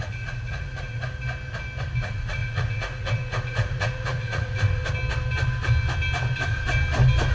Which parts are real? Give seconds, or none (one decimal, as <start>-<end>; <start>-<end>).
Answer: 1.0-2.0; 4.8-7.3